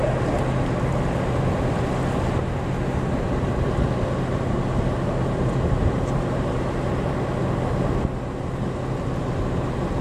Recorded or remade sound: recorded